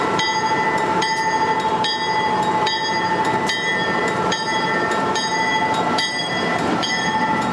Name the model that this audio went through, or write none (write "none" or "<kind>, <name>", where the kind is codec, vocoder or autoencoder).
vocoder, BigVGAN v2